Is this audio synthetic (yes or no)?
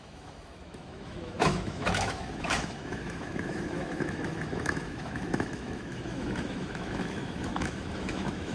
yes